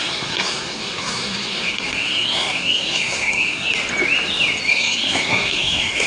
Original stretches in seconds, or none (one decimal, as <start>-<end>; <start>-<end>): 3.7-4.7